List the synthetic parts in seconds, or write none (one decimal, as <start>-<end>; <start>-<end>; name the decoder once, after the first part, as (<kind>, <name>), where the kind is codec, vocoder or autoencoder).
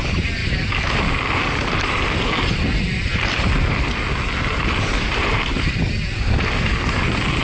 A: none